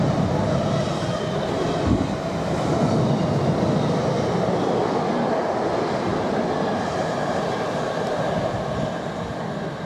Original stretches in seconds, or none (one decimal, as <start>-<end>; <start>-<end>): 0.0-9.9